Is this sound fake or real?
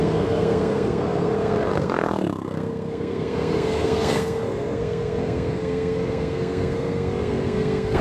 fake